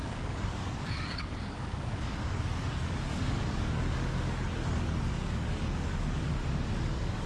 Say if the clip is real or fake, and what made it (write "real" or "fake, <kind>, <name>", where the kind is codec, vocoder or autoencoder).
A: fake, codec, DAC